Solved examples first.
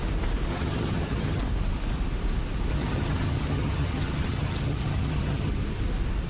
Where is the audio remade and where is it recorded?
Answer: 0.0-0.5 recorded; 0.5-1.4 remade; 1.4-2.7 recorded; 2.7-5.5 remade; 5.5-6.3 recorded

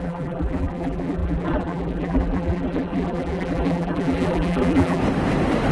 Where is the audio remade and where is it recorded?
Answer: 0.0-5.0 remade; 5.0-5.7 recorded

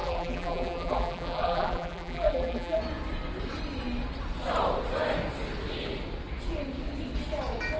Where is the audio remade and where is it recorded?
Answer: 0.0-2.8 remade; 2.8-7.8 recorded

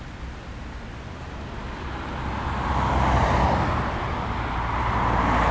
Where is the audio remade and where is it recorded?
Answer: 0.0-5.5 recorded

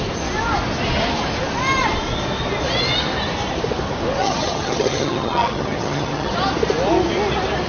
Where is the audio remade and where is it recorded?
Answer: 0.0-4.2 recorded; 4.2-6.3 remade; 6.3-7.7 recorded